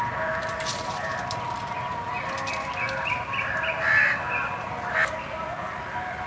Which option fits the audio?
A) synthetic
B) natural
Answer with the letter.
B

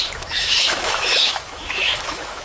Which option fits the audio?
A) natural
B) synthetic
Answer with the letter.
B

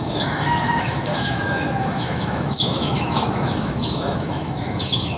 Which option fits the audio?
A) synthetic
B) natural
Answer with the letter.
A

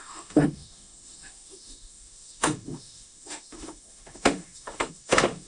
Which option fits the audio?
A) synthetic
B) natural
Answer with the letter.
A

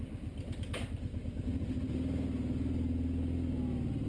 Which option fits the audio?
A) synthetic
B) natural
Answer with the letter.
B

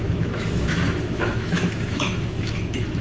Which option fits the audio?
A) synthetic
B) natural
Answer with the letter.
A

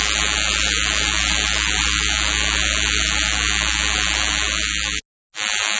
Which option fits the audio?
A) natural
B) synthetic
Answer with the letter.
A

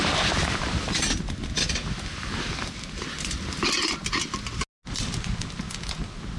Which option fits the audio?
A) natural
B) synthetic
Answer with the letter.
A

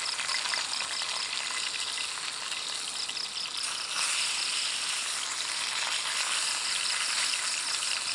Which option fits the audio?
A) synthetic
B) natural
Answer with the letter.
B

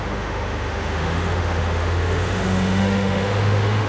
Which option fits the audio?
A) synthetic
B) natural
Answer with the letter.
A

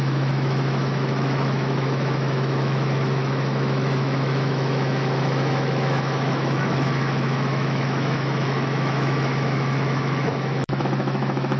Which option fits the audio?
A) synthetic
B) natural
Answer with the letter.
A